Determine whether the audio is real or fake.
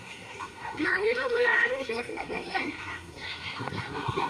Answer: fake